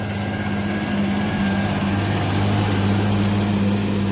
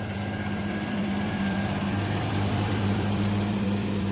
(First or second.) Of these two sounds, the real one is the first